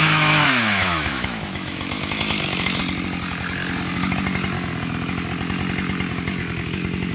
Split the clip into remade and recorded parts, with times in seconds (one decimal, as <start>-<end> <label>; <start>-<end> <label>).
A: 0.0-2.8 remade; 2.8-7.1 recorded